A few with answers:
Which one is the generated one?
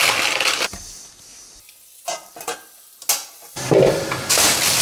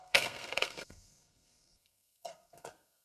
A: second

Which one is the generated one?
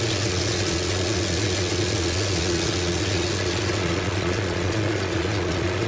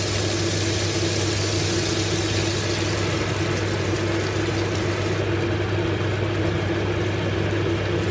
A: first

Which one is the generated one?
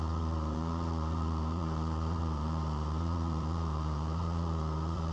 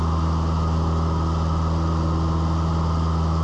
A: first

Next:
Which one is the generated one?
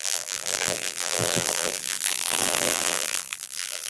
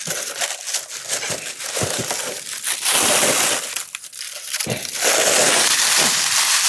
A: first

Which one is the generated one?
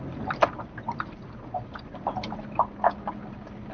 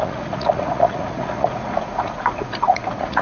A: second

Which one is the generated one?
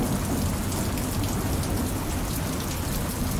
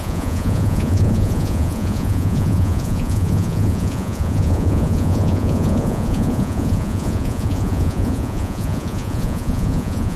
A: second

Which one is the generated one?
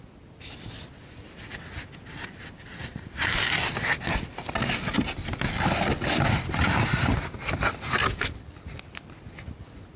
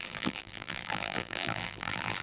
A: second